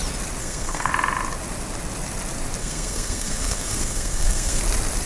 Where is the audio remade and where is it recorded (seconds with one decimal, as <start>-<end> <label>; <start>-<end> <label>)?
0.0-0.4 recorded; 0.4-0.9 remade; 0.9-2.6 recorded; 2.6-4.6 remade; 4.6-5.1 recorded